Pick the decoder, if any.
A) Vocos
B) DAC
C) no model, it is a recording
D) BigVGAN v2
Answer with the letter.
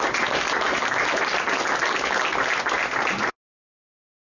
C